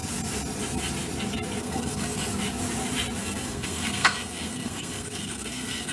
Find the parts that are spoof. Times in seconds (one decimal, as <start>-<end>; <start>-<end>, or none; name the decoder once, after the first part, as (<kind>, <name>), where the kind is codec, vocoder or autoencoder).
1.6-2.3 (codec, SNAC); 3.2-5.9